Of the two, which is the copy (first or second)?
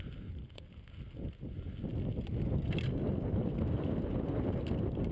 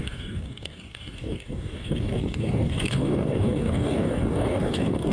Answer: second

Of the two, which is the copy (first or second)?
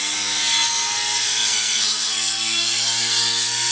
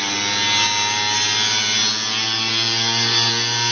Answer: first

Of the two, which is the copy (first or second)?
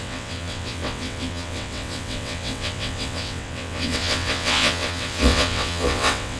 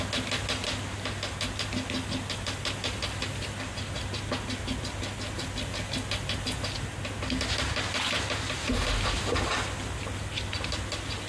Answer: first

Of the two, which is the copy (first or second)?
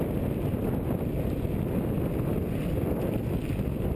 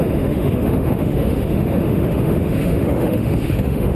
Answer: second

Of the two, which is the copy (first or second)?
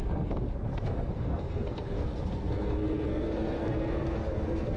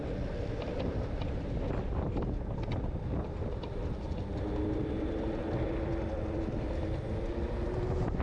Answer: first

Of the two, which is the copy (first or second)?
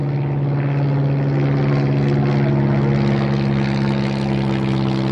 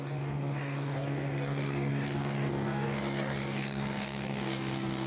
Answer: second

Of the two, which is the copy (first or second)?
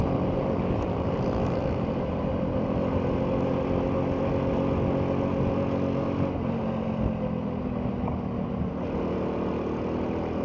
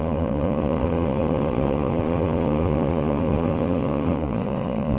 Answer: second